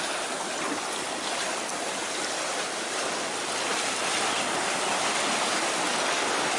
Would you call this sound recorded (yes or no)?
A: yes